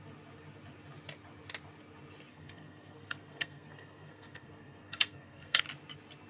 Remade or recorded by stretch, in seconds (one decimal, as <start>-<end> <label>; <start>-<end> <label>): 0.0-2.3 recorded; 2.3-5.6 remade; 5.6-6.3 recorded